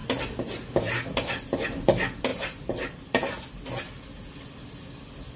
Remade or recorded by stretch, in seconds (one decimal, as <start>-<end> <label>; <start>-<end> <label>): 0.0-0.8 recorded; 0.8-5.4 remade